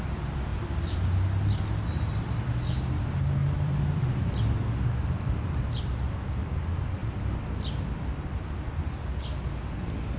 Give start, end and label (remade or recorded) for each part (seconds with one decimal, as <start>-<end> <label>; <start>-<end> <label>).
0.0-0.5 recorded; 0.5-3.0 remade; 3.0-3.4 recorded; 3.4-5.7 remade; 5.7-10.2 recorded